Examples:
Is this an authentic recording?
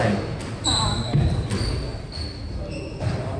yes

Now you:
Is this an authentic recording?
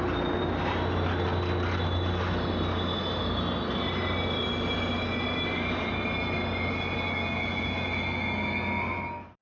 yes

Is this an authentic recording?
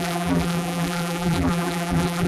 no